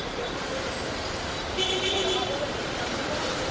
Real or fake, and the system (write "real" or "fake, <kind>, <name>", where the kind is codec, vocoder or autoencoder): fake, vocoder, BigVGAN v2